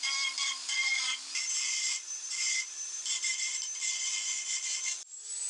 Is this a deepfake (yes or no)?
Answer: yes